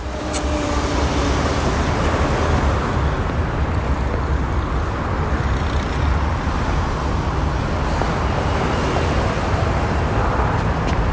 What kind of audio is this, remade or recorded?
recorded